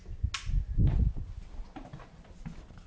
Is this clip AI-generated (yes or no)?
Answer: no